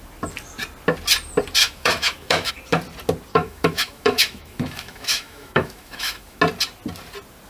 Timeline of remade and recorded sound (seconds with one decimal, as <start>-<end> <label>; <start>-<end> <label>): 0.0-1.6 recorded; 1.6-2.5 remade; 2.5-3.3 recorded; 3.3-6.4 remade; 6.4-7.5 recorded